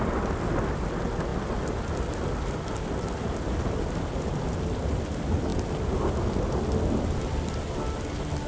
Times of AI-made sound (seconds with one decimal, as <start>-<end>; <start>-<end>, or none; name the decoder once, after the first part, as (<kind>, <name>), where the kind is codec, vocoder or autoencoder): none